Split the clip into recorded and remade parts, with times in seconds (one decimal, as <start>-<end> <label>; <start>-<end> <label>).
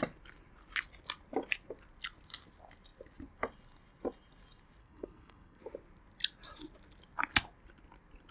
0.0-4.8 recorded; 4.8-5.6 remade; 5.6-8.3 recorded